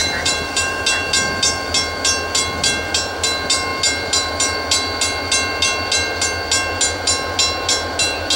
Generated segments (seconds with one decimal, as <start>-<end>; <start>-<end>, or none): 0.0-0.8